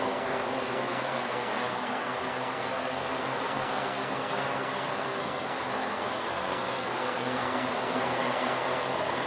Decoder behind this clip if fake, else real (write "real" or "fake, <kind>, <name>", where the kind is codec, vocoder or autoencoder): fake, codec, SNAC